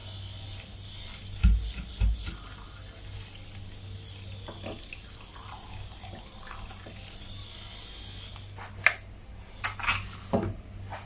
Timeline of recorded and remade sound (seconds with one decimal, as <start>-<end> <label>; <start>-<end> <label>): 0.0-11.1 recorded